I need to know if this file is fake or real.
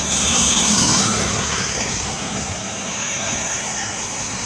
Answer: fake